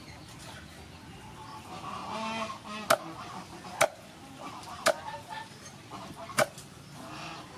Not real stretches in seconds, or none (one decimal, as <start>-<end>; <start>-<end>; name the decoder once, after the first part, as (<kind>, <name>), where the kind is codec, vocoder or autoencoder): none